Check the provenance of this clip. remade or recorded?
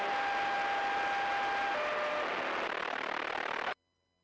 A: recorded